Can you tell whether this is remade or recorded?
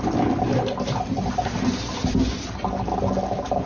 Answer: recorded